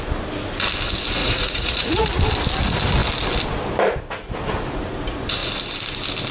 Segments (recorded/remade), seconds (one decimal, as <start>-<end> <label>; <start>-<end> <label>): 0.0-1.2 recorded; 1.2-2.1 remade; 2.1-6.3 recorded